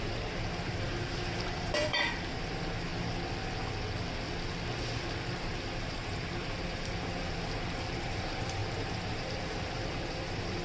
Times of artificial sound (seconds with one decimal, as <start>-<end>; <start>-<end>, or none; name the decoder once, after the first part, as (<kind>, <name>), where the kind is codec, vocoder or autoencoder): 0.0-2.9 (vocoder, BigVGAN v2); 5.8-10.6